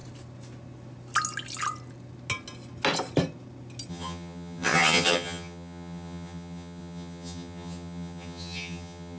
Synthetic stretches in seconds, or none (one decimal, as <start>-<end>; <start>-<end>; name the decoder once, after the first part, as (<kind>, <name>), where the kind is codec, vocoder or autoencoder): 3.9-9.2 (vocoder, HiFi-GAN)